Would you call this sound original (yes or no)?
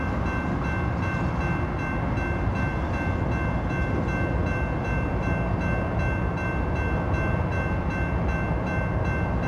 yes